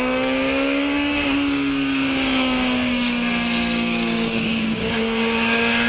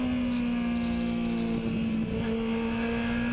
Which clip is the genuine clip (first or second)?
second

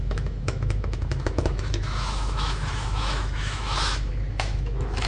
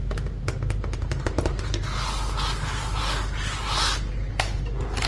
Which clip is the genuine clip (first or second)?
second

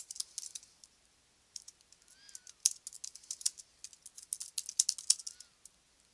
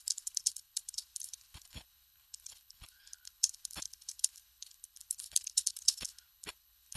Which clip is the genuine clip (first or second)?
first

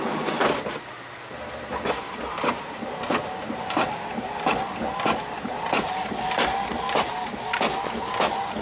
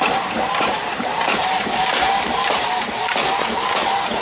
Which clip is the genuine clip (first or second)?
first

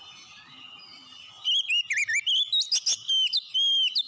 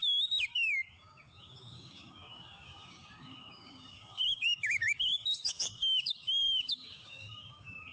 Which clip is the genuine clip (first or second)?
first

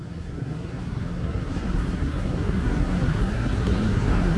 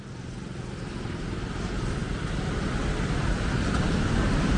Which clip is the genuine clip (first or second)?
second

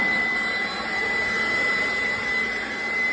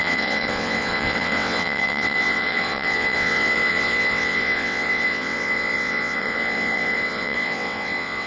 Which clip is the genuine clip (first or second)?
first